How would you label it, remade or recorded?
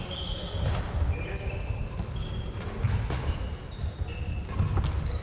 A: recorded